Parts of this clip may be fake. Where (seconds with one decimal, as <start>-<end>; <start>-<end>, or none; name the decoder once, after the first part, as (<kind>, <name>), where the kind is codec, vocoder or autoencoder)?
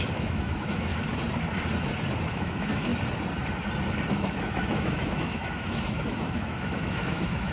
0.0-0.9 (autoencoder, DAC-VAE); 2.2-2.9; 4.1-7.5